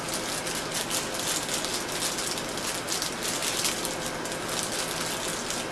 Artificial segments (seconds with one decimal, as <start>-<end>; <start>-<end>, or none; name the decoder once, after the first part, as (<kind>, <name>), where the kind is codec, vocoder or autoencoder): none